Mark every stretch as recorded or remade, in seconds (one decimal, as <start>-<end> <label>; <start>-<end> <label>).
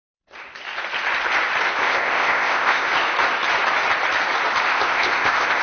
0.0-1.8 recorded; 1.8-2.9 remade; 2.9-4.7 recorded; 4.7-5.6 remade